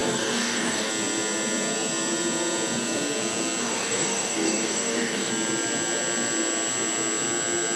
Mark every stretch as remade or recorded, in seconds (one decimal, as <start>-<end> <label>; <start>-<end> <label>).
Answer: 0.0-0.9 remade; 0.9-3.6 recorded; 3.6-5.3 remade; 5.3-7.8 recorded